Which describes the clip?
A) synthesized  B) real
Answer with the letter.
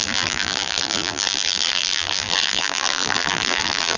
A